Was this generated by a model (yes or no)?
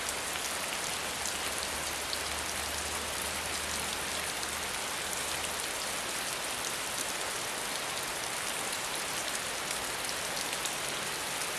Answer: no